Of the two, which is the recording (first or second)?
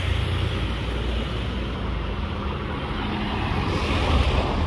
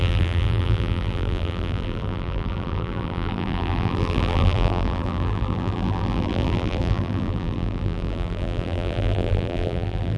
first